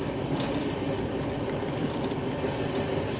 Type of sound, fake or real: real